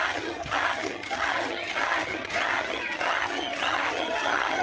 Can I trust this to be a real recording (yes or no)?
no